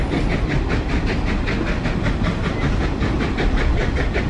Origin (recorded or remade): recorded